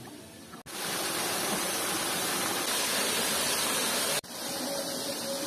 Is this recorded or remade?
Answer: recorded